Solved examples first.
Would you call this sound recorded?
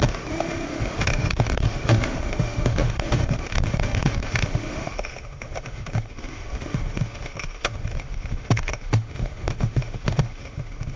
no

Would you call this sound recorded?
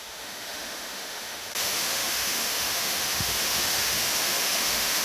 no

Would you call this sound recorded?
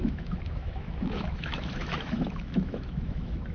no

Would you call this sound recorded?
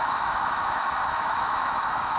no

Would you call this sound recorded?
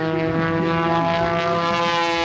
yes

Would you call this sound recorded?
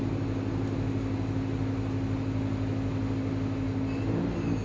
yes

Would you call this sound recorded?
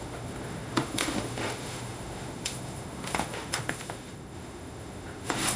no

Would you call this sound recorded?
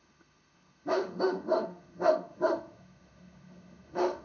no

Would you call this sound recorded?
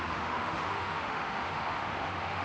no